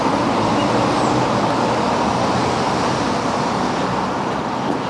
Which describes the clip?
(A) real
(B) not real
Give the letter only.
A